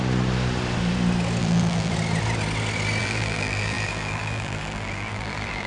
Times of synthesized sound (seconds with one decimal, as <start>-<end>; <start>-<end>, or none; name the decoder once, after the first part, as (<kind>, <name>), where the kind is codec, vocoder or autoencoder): 1.4-1.9 (vocoder, BigVGAN v2); 3.0-5.7